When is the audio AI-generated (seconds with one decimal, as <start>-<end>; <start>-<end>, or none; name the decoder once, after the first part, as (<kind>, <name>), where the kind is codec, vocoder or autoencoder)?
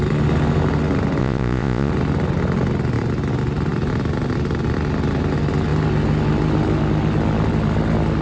1.2-1.9 (vocoder, Vocos)